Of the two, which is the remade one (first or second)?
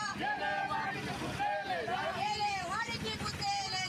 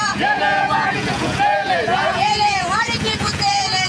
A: second